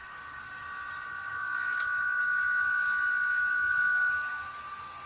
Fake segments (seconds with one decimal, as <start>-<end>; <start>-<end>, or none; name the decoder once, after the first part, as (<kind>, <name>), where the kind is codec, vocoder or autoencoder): 0.0-0.6 (codec, DAC); 1.3-4.4